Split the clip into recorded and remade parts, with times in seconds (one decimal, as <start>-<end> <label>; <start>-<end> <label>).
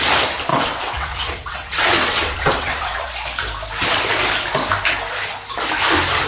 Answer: 0.0-0.5 recorded; 0.5-3.1 remade; 3.1-6.3 recorded